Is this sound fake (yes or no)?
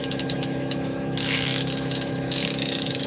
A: yes